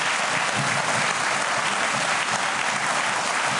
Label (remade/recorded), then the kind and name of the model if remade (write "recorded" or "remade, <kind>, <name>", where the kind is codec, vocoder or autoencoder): recorded